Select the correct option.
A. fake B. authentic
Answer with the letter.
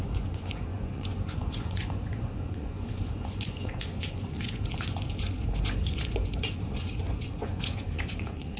A